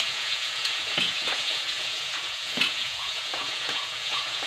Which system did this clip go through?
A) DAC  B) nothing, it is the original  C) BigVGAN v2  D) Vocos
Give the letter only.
D